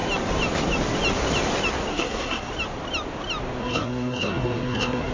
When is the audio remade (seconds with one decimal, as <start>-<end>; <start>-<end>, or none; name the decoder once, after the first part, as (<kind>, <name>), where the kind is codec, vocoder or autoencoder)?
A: 1.9-2.5 (codec, SNAC); 3.6-5.1